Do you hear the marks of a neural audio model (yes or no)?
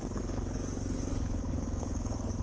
yes